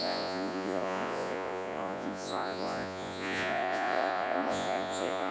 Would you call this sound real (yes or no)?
no